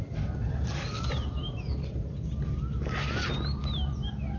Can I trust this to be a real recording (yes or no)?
yes